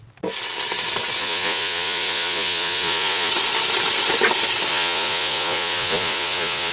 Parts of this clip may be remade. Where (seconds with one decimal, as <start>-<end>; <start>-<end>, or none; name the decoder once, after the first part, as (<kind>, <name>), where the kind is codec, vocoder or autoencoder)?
1.2-3.3 (vocoder, Vocos); 4.7-6.7